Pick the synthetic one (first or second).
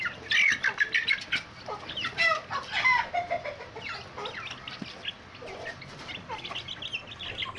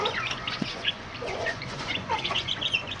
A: second